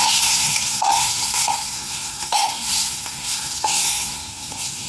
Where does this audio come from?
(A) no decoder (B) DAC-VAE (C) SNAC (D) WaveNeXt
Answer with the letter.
C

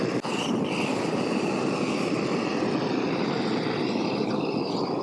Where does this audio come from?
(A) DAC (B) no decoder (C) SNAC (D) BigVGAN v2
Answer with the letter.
B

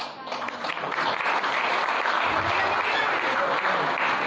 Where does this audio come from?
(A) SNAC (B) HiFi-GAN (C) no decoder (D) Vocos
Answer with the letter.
C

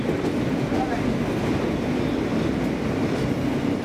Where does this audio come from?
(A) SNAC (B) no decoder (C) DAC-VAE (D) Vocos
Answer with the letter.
B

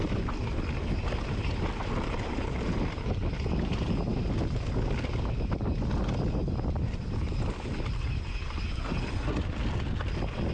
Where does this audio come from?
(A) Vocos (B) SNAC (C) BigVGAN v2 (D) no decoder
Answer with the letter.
D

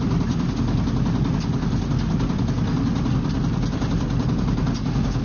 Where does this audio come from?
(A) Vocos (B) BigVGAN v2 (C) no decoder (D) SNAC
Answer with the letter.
C